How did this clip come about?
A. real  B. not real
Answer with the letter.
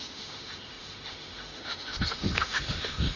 B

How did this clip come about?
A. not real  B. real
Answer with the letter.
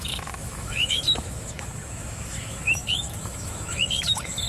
A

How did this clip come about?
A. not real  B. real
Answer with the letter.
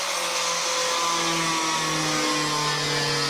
B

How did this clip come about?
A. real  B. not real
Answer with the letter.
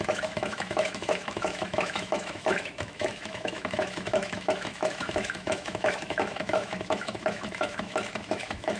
B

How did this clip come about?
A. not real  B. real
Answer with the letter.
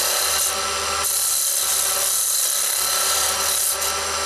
B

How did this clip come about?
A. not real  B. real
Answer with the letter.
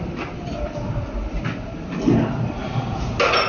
B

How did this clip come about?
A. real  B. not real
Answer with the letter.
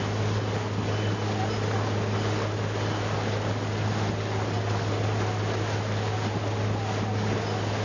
A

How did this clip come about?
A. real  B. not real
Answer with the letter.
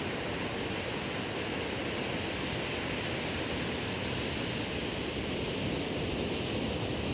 A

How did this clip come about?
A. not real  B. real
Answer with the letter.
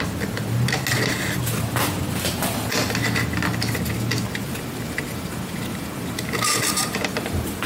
B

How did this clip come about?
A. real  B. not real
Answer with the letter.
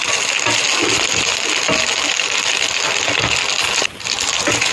A